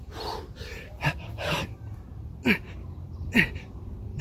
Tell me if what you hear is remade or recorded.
remade